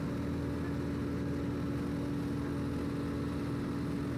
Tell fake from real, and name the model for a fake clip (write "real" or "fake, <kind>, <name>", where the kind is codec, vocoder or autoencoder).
real